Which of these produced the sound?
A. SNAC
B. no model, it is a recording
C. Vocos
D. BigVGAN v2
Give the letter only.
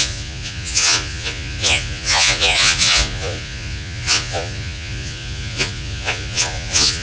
C